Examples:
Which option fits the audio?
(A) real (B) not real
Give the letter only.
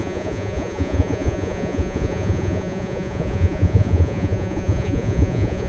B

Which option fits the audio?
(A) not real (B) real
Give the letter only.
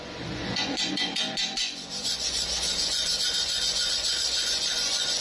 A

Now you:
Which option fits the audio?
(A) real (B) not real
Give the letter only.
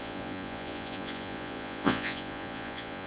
B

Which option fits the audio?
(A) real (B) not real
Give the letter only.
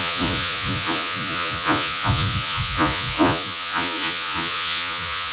B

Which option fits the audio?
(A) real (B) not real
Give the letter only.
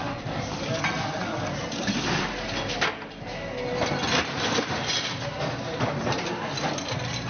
A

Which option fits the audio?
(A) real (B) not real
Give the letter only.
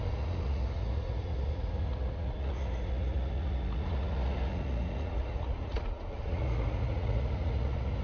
B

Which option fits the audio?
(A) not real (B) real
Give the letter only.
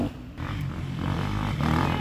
B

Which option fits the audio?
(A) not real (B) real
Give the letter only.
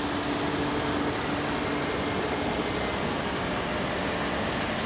B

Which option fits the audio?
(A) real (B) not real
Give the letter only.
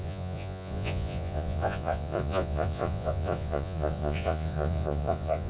B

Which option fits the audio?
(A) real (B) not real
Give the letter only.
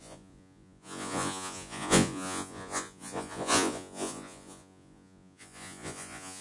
B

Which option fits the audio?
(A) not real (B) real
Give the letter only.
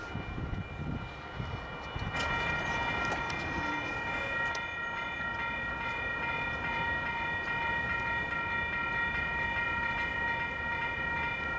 B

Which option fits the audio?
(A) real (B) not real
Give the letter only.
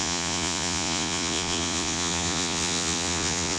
B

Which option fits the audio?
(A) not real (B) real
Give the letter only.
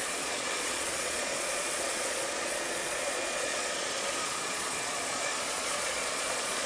A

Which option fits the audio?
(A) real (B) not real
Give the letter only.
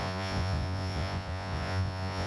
B